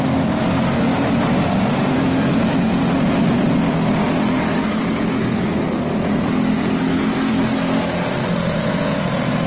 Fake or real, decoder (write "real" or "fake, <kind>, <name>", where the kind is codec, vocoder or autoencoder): real